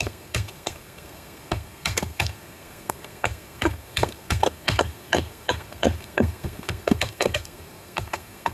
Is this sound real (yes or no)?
no